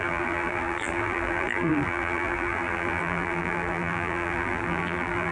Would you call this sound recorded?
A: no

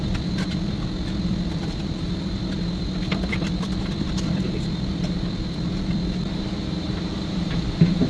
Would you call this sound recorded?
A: no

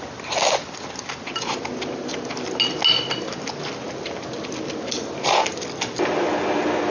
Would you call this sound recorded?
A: yes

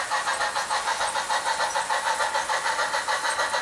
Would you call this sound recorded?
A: yes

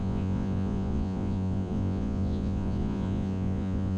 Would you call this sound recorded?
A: no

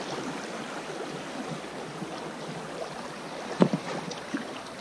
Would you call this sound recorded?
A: yes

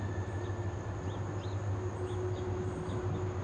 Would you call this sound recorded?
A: yes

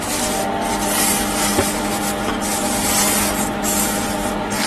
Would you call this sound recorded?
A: yes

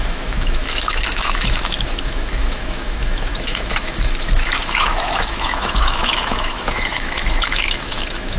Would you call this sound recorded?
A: no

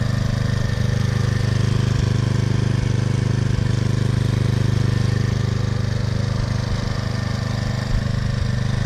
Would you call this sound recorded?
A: yes